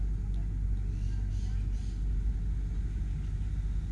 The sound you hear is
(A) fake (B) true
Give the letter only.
B